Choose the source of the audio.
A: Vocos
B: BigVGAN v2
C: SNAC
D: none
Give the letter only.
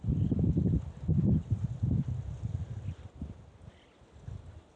D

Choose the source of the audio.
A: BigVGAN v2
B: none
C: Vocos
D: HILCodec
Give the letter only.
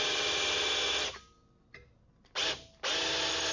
B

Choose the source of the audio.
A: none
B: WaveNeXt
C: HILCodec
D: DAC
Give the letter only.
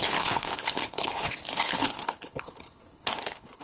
C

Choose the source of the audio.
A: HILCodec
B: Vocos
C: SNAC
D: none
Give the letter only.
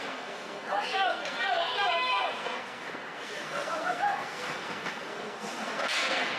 C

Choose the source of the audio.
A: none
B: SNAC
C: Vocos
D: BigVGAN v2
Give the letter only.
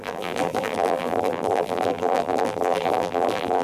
D